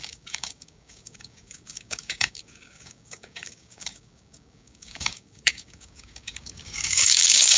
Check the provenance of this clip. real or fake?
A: fake